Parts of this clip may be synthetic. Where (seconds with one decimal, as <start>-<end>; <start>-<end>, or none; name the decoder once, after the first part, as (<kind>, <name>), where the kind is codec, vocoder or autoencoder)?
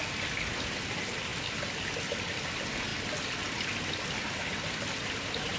none